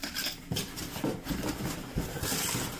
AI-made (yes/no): no